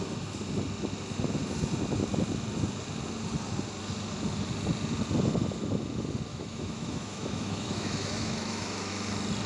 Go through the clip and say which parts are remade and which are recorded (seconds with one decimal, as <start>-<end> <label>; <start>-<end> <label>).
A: 0.0-6.3 recorded; 6.3-8.9 remade; 8.9-9.5 recorded